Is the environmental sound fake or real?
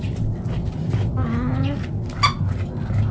real